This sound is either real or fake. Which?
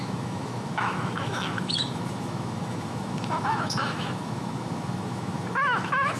fake